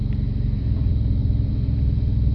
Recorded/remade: remade